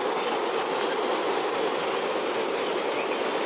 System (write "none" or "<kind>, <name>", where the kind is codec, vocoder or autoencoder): none